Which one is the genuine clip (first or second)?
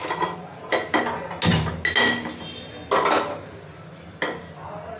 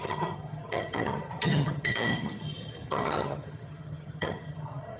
first